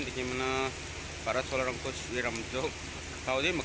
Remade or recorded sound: recorded